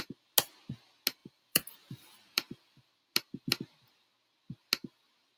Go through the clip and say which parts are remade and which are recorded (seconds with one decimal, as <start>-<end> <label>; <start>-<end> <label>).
0.0-1.2 recorded; 1.2-3.1 remade; 3.1-5.4 recorded